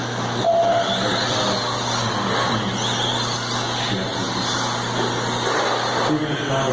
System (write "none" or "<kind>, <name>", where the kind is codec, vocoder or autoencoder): none